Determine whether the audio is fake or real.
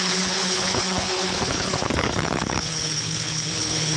fake